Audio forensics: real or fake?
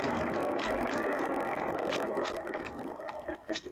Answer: fake